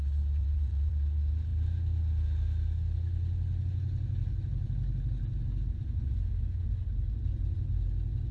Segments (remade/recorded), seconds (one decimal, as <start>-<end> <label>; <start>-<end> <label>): 0.0-0.4 recorded; 0.4-0.9 remade; 0.9-8.3 recorded